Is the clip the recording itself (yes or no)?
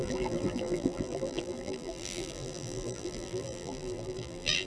no